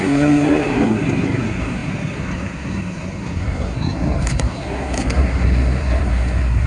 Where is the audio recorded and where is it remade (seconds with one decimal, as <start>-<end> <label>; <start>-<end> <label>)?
0.0-6.7 remade